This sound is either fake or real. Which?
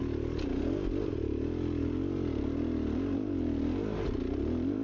real